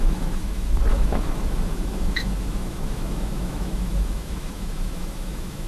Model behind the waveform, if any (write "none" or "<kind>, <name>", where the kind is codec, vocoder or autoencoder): autoencoder, DAC-VAE